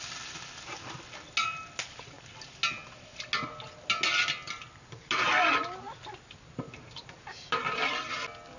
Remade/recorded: recorded